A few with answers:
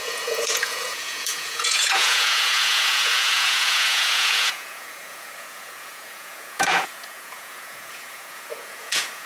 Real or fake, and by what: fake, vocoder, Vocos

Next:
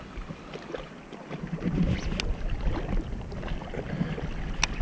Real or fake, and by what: real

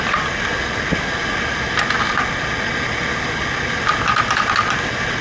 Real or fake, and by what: real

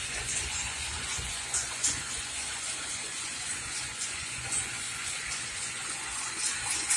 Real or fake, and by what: fake, vocoder, Vocos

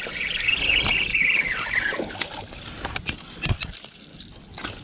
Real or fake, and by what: real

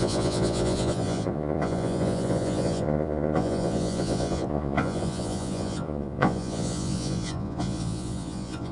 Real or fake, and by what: fake, vocoder, Vocos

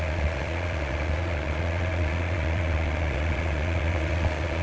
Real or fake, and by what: fake, vocoder, Vocos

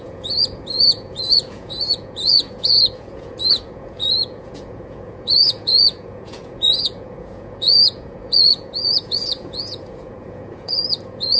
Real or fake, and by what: fake, vocoder, Vocos